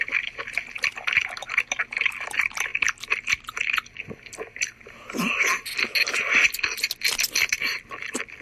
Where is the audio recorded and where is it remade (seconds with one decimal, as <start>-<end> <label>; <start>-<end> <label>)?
0.0-8.4 recorded